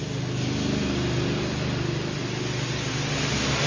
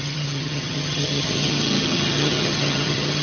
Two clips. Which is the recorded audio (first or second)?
first